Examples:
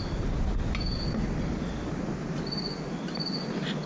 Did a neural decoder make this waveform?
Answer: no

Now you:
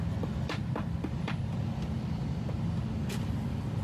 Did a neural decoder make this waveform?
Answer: no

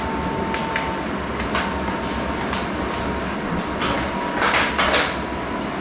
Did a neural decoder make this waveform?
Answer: no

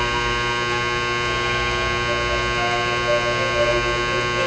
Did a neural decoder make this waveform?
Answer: no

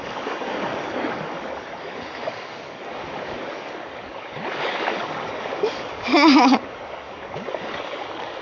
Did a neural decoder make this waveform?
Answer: yes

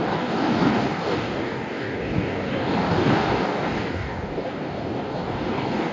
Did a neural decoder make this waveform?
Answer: yes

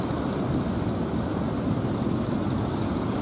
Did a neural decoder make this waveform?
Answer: no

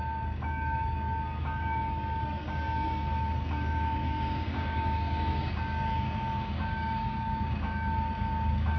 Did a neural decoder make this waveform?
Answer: yes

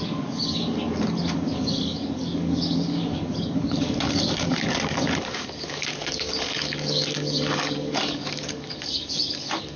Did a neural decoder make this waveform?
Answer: yes